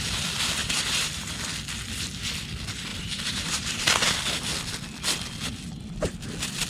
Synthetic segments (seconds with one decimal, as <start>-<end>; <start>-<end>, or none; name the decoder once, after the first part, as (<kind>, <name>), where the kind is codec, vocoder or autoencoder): 0.6-1.1 (vocoder, BigVGAN v2); 2.9-3.8